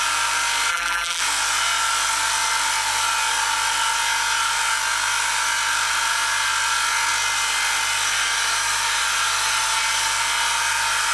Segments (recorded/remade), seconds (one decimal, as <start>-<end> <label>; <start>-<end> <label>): 0.0-0.7 recorded; 0.7-1.2 remade; 1.2-11.1 recorded